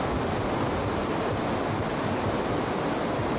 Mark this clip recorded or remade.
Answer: recorded